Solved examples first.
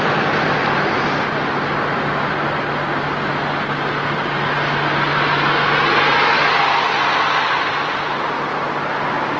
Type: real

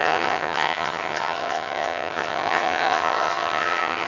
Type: fake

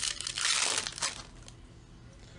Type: real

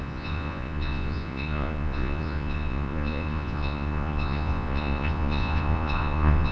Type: fake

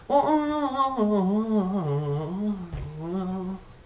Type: real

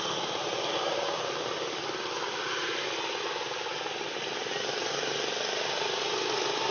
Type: real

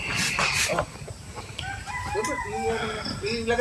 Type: real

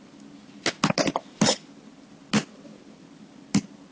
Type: real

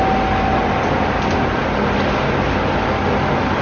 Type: real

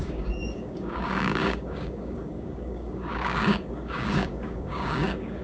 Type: fake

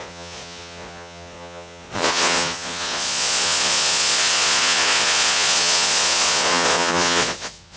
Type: fake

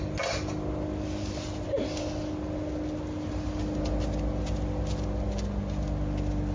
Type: real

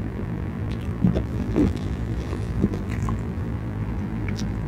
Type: fake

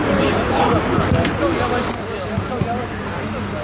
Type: real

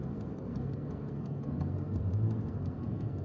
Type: fake